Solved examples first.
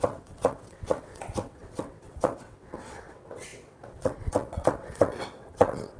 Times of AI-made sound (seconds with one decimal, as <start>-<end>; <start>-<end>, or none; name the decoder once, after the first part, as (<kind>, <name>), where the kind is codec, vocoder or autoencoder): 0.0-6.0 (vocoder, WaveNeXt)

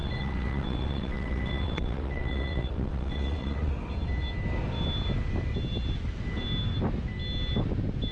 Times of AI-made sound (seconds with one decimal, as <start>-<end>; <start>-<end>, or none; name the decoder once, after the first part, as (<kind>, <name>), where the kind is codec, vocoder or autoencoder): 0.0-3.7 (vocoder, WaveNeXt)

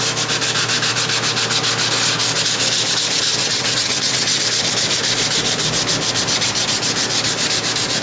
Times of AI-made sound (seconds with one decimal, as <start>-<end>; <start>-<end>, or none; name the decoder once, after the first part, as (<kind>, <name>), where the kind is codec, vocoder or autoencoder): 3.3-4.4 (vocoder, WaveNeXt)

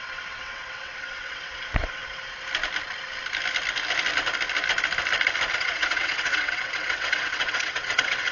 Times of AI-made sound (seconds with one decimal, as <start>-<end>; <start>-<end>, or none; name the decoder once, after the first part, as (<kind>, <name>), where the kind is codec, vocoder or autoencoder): 0.0-2.0 (vocoder, WaveNeXt); 5.5-8.3